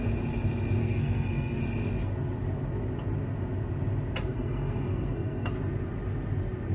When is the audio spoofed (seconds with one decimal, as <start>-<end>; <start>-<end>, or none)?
0.8-1.6; 4.3-5.5